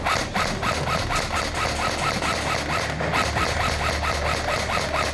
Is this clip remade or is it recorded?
recorded